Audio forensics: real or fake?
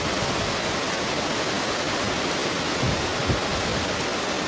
real